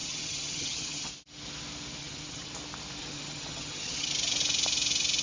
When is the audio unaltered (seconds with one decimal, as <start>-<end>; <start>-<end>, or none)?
1.1-2.0; 2.5-3.0; 4.1-5.2